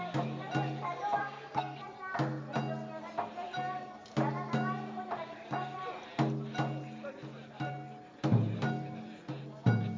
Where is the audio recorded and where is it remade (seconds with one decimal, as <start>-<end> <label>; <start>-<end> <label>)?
0.0-1.2 recorded; 1.2-1.8 remade; 1.8-10.0 recorded